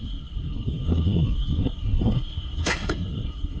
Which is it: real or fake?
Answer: fake